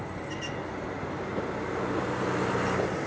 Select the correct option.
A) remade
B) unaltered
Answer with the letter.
B